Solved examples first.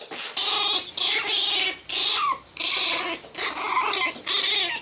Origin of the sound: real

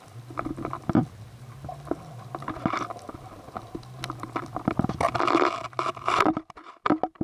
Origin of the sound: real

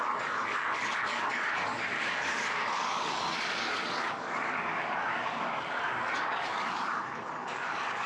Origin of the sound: fake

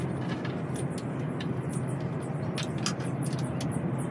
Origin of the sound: real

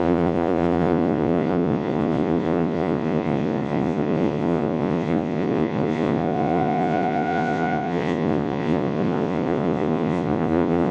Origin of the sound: fake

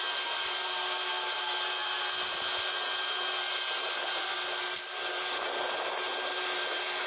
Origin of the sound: real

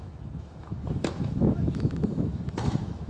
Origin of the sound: fake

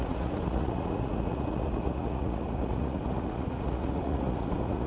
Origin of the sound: fake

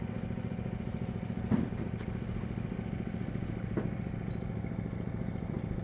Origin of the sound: real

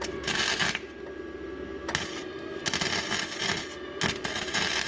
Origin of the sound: real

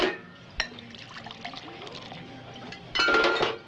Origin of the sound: real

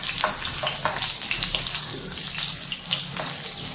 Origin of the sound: real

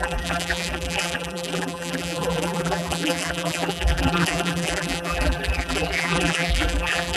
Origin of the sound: fake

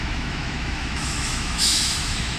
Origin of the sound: fake